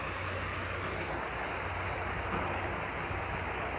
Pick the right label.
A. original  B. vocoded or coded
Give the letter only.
A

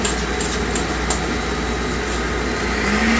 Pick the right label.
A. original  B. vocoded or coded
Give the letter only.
A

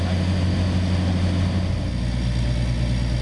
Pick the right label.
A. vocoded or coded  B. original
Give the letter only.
B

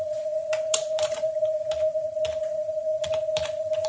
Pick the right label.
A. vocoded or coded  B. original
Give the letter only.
A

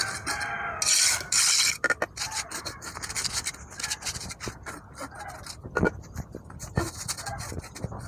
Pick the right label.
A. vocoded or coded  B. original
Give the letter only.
B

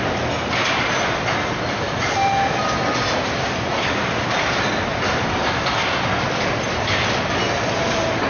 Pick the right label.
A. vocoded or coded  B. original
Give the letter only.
B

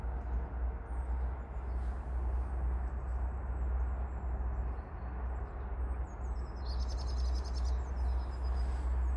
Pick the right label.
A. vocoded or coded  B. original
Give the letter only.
B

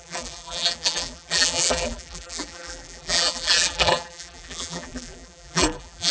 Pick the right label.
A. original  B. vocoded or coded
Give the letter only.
B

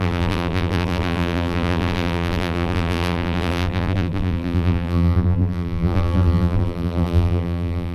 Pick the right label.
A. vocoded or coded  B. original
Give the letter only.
A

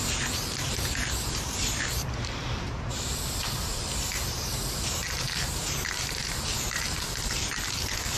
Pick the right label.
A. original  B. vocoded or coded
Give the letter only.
B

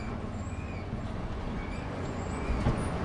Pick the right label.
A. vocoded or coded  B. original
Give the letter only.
A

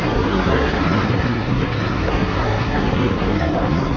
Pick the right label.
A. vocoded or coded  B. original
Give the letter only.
A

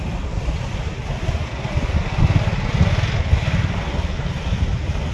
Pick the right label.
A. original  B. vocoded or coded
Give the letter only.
A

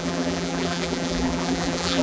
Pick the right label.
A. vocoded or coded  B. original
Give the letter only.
A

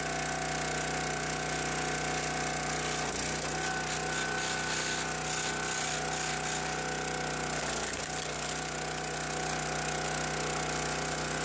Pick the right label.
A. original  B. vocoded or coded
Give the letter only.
A